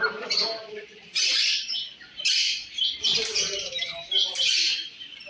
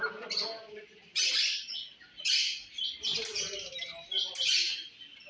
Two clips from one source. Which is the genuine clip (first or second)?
second